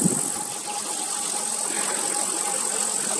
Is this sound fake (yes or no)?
no